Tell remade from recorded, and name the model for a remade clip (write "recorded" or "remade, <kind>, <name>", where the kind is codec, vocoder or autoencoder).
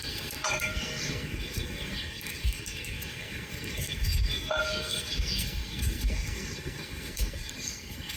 remade, codec, SNAC